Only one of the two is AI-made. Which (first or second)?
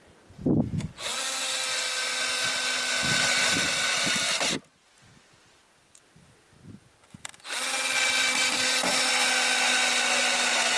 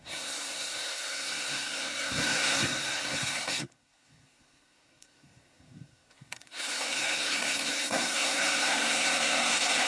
second